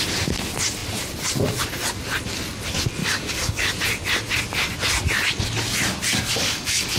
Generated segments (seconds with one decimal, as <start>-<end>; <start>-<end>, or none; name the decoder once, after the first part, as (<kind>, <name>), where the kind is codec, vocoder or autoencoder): 3.0-3.7 (codec, DAC); 6.1-7.0